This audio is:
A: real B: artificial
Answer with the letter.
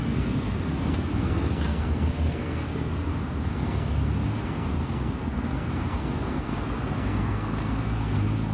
B